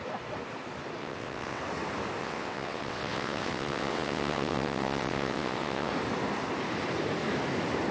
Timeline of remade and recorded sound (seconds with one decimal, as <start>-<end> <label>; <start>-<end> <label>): 0.0-1.0 recorded; 1.0-1.6 remade; 1.6-2.2 recorded; 2.2-5.9 remade; 5.9-7.9 recorded